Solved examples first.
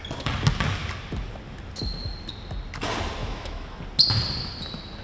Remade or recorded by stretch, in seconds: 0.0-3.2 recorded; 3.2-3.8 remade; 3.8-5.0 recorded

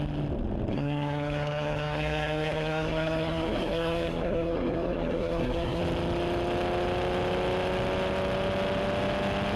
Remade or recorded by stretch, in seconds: 0.0-0.7 recorded; 0.7-5.8 remade; 5.8-9.6 recorded

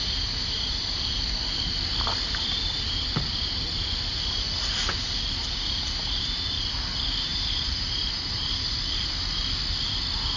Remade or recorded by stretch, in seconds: 0.0-7.3 recorded; 7.3-8.5 remade; 8.5-10.4 recorded

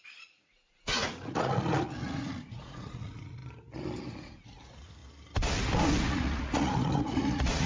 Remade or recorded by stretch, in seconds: 0.0-3.4 remade; 3.4-4.1 recorded; 4.1-5.0 remade; 5.0-6.1 recorded; 6.1-7.7 remade

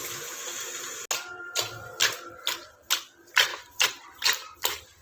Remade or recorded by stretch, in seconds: 0.0-3.5 recorded; 3.5-4.6 remade; 4.6-5.0 recorded

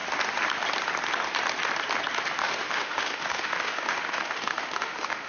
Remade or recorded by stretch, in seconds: 0.0-2.4 recorded; 2.4-5.3 remade